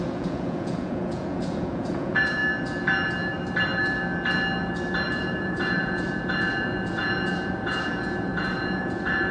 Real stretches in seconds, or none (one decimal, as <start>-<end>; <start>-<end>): 2.4-5.1